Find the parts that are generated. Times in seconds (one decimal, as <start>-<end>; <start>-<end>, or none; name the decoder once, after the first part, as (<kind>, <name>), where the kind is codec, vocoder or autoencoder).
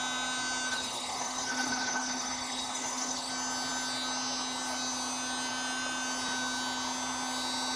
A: 0.7-3.3 (codec, HILCodec)